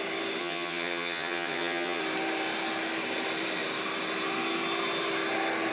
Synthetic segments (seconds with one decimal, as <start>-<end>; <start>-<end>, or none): 0.4-2.0